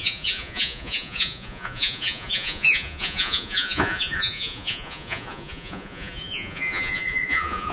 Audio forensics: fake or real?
fake